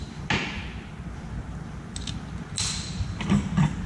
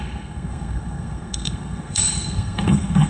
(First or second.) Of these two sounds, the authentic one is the first